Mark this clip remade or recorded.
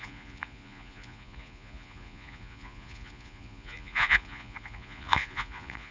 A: remade